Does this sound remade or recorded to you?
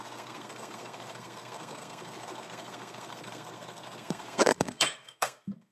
remade